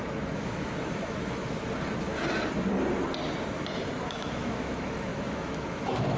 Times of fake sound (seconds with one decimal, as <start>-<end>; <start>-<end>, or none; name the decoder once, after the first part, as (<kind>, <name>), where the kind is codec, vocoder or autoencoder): 0.0-1.4 (autoencoder, DAC-VAE); 4.0-6.2